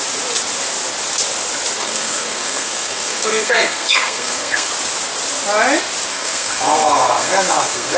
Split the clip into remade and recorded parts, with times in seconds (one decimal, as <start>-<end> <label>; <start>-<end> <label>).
0.0-1.8 recorded; 1.8-4.7 remade; 4.7-6.1 recorded; 6.1-8.0 remade